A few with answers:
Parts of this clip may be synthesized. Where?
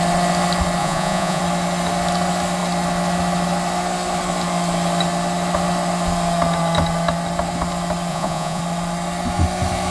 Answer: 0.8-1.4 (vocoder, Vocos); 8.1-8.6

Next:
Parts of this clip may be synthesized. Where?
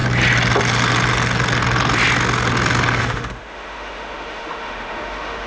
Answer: 3.0-5.5 (autoencoder, DAC-VAE)